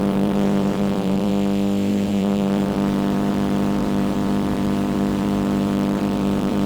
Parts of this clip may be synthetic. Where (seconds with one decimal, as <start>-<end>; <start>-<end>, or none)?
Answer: 0.0-1.3; 1.9-6.7